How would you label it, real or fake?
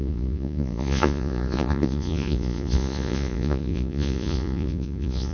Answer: fake